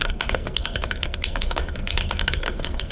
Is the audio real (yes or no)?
no